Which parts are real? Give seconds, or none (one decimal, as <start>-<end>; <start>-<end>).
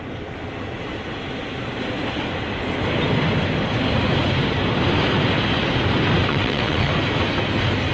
0.0-6.3; 6.9-7.9